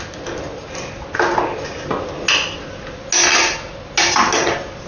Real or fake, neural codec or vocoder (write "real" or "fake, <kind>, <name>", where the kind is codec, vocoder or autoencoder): real